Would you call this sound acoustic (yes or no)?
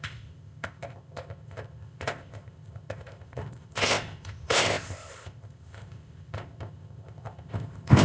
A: no